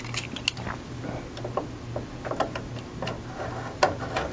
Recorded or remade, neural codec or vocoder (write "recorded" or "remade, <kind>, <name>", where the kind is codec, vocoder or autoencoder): recorded